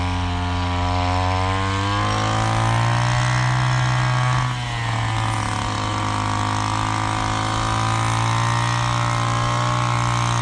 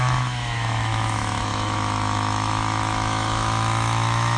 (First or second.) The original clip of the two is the first